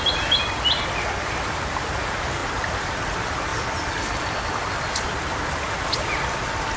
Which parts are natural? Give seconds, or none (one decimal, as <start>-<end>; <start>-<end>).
0.0-6.8